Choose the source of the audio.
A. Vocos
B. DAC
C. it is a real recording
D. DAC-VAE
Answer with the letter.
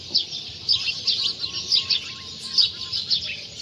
C